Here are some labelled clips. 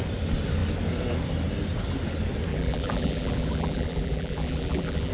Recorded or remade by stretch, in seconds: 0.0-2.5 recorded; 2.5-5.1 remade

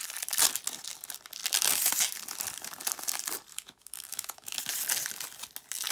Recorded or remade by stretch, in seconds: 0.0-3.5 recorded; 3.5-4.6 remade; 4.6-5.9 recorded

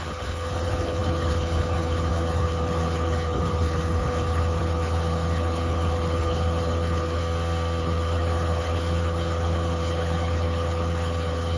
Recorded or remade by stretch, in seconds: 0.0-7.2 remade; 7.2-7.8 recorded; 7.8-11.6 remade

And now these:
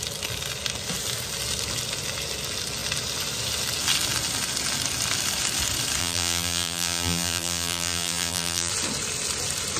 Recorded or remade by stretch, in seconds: 0.0-6.0 recorded; 6.0-8.7 remade; 8.7-9.8 recorded

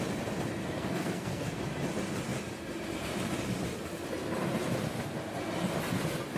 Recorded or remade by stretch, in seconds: 0.0-0.6 recorded; 0.6-1.6 remade; 1.6-6.4 recorded

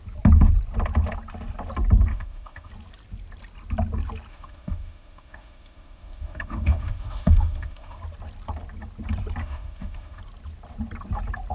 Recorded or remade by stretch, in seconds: 0.0-2.1 recorded; 2.1-2.7 remade; 2.7-4.3 recorded; 4.3-8.0 remade; 8.0-9.4 recorded; 9.4-10.2 remade; 10.2-11.5 recorded